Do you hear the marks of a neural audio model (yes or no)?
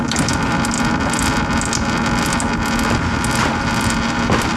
no